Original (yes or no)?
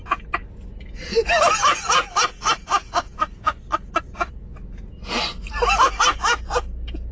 yes